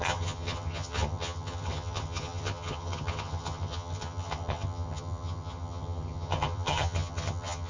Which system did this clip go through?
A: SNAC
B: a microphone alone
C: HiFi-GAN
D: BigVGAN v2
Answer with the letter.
C